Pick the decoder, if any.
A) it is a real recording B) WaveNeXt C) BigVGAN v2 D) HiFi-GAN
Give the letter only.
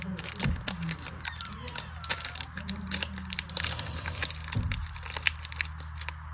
A